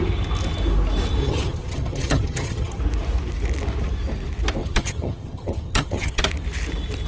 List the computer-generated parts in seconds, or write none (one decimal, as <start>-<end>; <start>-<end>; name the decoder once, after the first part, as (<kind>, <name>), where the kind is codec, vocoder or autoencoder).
1.2-2.8 (vocoder, HiFi-GAN); 4.6-6.2